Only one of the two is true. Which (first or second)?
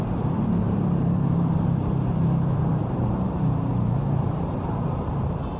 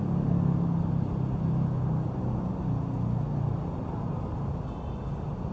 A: second